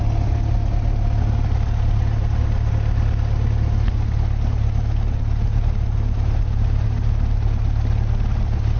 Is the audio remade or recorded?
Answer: recorded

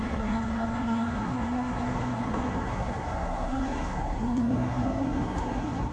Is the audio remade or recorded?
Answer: remade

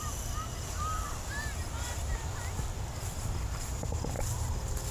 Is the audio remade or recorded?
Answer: remade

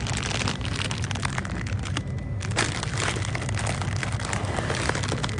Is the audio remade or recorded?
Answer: recorded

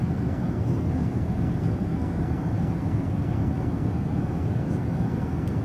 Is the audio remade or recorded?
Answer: remade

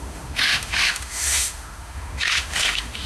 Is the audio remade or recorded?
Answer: remade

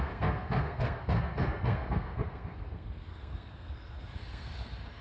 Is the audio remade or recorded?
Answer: remade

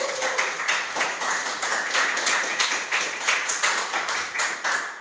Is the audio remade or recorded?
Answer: remade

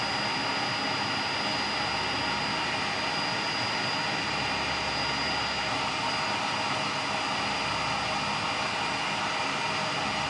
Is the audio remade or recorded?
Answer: recorded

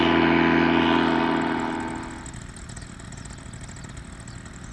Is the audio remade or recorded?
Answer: recorded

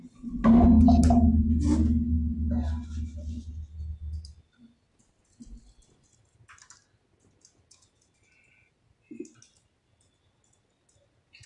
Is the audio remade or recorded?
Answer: recorded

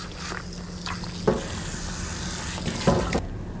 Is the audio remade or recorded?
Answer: recorded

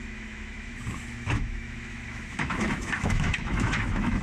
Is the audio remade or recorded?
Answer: remade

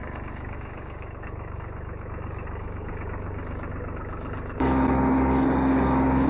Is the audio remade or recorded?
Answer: remade